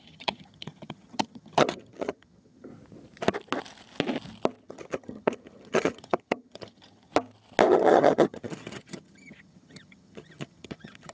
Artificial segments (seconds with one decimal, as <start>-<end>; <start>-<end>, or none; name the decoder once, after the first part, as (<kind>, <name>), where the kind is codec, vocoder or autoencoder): 0.0-2.7 (vocoder, HiFi-GAN); 4.6-7.1; 7.7-11.1